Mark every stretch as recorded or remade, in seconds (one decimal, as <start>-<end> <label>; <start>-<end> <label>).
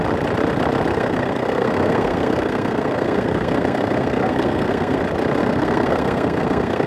0.0-0.9 recorded; 0.9-5.0 remade; 5.0-5.4 recorded; 5.4-6.9 remade